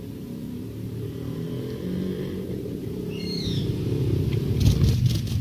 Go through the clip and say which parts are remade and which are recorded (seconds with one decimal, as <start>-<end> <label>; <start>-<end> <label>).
0.0-0.4 recorded; 0.4-3.6 remade; 3.6-5.4 recorded